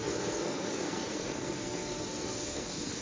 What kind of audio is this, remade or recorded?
remade